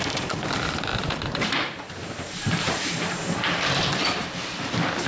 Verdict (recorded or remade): remade